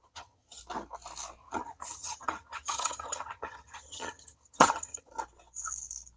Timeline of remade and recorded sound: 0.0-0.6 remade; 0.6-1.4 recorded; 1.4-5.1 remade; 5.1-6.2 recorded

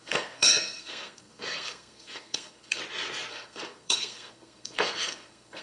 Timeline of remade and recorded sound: 0.0-2.8 remade; 2.8-3.3 recorded; 3.3-5.6 remade

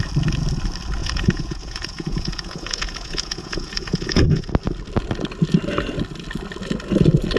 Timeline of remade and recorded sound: 0.0-1.0 recorded; 1.0-4.5 remade; 4.5-7.4 recorded